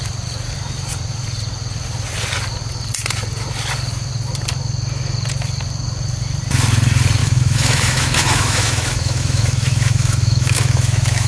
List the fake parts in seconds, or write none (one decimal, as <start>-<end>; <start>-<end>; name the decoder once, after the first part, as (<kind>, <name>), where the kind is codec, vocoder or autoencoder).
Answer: 7.2-11.3 (autoencoder, DAC-VAE)